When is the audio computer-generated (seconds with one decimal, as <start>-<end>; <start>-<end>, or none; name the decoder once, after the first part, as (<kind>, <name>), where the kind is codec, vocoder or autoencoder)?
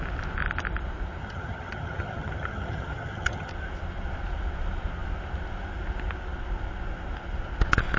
1.2-3.5 (vocoder, HiFi-GAN)